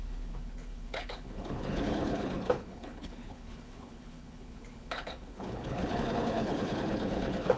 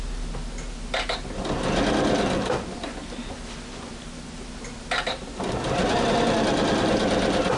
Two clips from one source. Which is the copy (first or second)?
first